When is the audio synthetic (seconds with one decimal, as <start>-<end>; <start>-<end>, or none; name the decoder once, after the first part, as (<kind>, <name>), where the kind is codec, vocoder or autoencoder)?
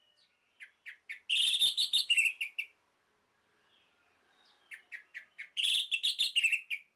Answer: 1.6-2.3 (autoencoder, DAC-VAE)